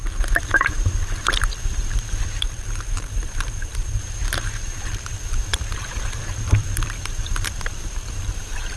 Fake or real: fake